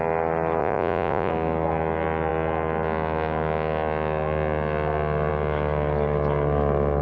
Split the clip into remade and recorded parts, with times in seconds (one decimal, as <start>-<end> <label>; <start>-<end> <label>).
0.0-0.6 recorded; 0.6-1.3 remade; 1.3-7.0 recorded